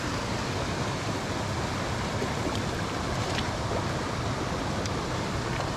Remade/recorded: recorded